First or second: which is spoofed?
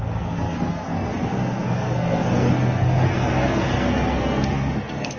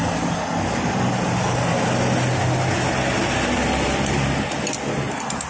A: first